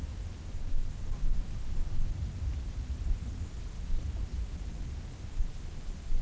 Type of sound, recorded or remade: recorded